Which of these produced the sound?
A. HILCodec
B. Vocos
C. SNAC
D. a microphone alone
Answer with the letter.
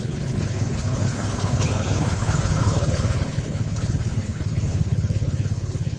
A